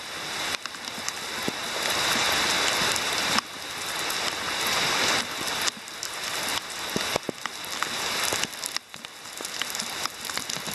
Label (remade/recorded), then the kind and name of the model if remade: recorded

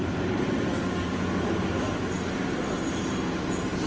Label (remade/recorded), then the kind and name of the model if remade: recorded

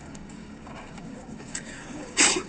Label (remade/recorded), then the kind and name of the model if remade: remade, codec, DAC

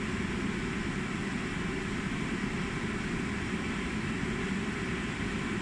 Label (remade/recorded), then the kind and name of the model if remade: recorded